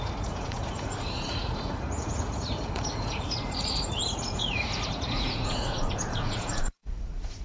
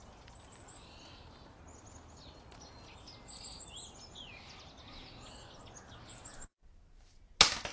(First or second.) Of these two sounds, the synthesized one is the first